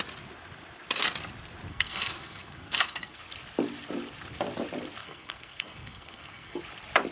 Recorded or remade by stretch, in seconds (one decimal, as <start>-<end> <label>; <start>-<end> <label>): 0.0-1.7 recorded; 1.7-3.2 remade; 3.2-5.0 recorded; 5.0-6.6 remade; 6.6-7.1 recorded

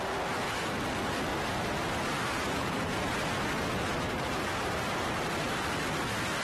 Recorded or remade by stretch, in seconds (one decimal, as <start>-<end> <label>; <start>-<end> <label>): 0.0-1.3 recorded; 1.3-5.1 remade; 5.1-6.4 recorded